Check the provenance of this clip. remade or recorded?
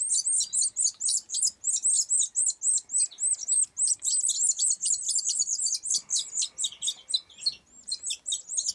recorded